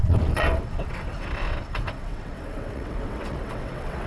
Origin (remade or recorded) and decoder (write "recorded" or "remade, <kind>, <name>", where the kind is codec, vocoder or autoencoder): remade, vocoder, WaveNeXt